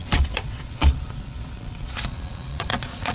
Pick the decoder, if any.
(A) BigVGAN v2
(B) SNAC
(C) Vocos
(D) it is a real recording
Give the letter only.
C